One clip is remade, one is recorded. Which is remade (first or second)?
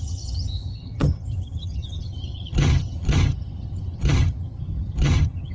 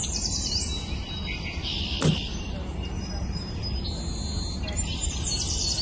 first